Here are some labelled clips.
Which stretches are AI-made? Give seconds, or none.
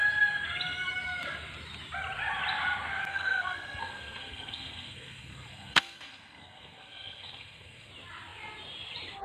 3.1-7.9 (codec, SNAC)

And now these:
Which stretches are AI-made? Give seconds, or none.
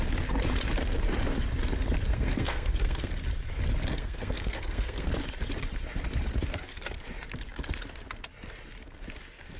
2.1-3.1 (codec, SNAC); 3.9-5.1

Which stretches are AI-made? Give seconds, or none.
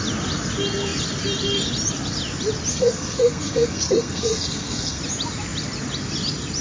2.7-5.0 (codec, SNAC)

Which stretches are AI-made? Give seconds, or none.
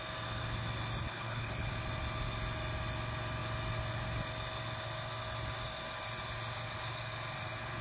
1.0-1.7 (codec, HILCodec)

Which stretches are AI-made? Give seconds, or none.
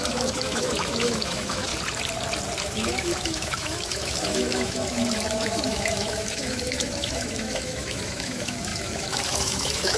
0.0-1.7 (autoencoder, DAC-VAE); 2.6-10.0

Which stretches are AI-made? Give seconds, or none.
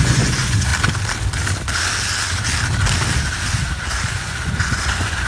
0.0-0.7 (vocoder, Vocos); 3.9-5.3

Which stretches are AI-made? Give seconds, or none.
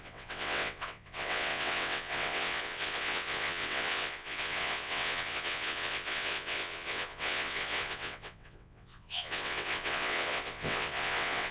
0.0-11.5 (vocoder, WaveNeXt)